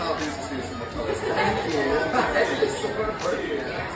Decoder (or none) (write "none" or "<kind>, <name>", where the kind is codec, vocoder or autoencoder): none